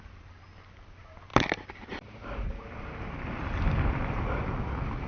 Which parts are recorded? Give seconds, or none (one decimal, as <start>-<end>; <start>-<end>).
0.0-1.3; 4.4-5.1